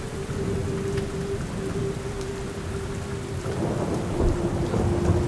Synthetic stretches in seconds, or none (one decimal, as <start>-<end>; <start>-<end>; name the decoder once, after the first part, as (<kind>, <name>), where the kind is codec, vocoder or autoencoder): none